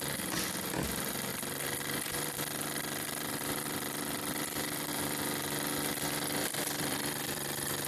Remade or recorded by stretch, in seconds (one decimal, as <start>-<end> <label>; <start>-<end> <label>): 0.0-1.3 recorded; 1.3-4.9 remade; 4.9-6.4 recorded; 6.4-7.9 remade